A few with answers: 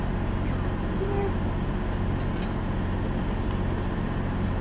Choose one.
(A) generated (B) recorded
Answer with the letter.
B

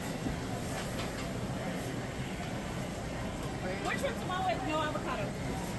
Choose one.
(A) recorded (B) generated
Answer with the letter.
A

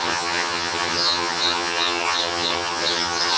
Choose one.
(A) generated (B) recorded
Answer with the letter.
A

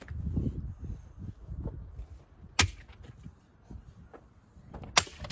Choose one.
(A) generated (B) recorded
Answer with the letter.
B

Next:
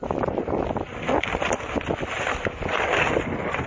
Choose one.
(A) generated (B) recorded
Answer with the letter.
B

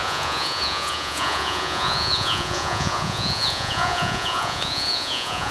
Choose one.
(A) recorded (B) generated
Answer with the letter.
B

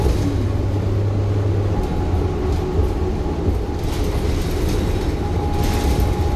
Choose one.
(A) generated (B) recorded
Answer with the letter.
B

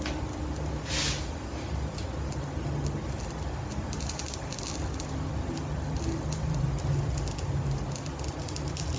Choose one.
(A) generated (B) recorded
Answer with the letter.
B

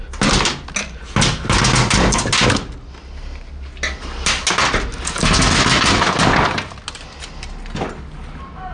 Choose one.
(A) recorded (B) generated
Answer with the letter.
A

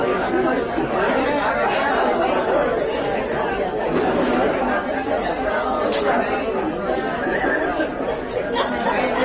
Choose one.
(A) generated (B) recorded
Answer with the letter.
B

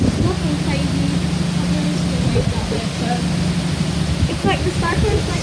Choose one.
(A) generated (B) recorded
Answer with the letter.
B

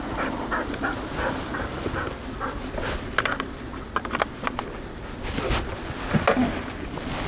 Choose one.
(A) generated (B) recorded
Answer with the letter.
B